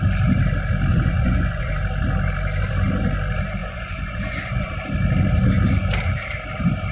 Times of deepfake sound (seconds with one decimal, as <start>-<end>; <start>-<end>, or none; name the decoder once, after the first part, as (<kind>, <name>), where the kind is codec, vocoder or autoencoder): 0.9-1.7 (vocoder, Vocos); 3.6-4.7